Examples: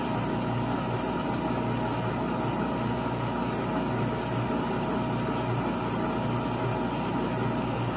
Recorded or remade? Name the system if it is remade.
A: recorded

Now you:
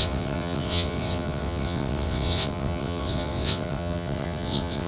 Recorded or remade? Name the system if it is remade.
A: remade, vocoder, WaveNeXt